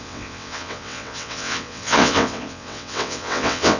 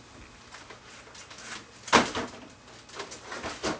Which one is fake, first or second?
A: first